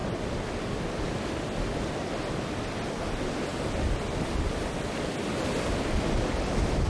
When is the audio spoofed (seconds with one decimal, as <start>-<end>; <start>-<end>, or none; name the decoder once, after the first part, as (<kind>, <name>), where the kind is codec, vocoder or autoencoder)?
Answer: none